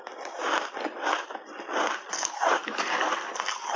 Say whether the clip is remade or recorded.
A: remade